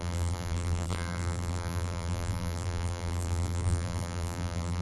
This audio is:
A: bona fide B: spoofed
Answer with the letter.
B